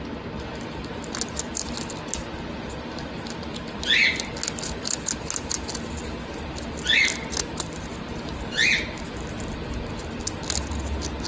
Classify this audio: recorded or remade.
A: recorded